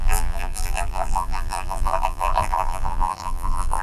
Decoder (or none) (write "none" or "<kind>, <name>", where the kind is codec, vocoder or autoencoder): vocoder, BigVGAN v2